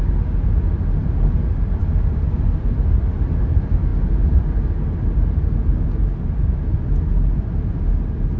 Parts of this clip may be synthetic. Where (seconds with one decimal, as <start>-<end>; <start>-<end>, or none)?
none